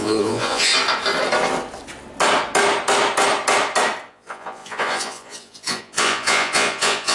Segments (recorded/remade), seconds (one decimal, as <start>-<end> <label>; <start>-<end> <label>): 0.0-0.7 remade; 0.7-4.1 recorded; 4.1-7.1 remade